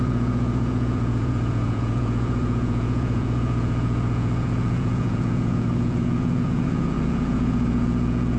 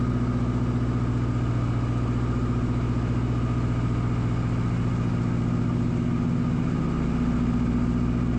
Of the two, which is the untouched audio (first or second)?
second